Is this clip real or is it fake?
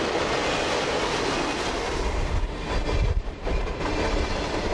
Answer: real